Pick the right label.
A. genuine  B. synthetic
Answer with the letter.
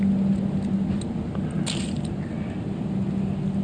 A